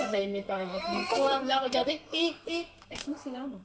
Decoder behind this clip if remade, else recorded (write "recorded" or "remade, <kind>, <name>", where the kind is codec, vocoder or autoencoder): remade, codec, SNAC